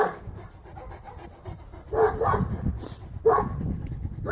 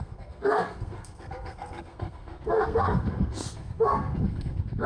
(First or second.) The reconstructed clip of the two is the second